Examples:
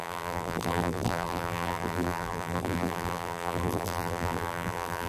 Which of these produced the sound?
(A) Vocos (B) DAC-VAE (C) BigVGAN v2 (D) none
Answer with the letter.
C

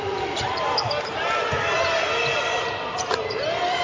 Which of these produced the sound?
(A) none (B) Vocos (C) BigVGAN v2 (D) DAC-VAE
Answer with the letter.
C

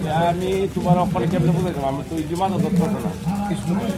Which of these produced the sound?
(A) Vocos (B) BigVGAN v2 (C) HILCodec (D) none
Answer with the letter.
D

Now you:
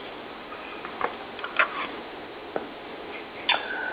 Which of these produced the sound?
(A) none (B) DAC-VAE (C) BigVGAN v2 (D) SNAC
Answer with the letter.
A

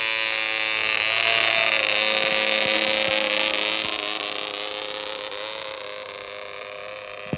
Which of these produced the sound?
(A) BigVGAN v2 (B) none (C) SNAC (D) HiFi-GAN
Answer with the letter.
B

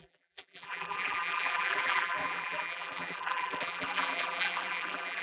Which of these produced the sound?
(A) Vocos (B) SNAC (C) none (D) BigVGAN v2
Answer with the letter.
D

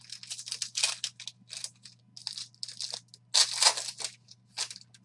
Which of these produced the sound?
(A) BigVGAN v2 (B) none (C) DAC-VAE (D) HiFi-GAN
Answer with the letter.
B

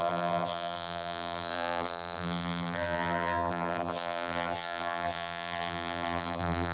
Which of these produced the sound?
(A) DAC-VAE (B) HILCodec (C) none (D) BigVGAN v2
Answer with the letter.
D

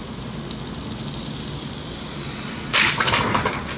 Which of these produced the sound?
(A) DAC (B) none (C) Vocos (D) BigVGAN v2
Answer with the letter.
D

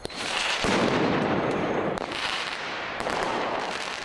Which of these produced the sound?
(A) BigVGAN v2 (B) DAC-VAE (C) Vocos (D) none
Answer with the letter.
A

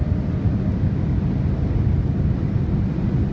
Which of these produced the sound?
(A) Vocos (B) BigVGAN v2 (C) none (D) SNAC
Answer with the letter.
C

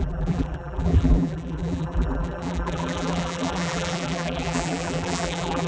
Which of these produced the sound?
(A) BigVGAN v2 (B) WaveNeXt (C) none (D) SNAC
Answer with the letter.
A